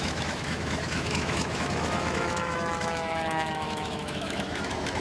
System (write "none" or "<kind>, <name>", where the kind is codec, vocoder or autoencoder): autoencoder, DAC-VAE